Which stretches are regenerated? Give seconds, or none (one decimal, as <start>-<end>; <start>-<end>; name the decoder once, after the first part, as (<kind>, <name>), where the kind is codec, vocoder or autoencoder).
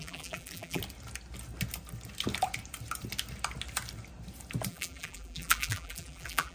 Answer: 0.0-0.8 (vocoder, BigVGAN v2); 4.7-6.5